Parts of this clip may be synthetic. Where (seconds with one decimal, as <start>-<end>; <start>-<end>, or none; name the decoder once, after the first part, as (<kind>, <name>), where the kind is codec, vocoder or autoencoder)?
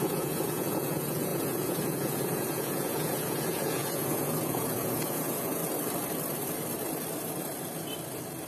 0.0-5.6 (vocoder, Vocos)